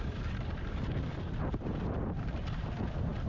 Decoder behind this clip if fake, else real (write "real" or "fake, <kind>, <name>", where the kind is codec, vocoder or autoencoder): real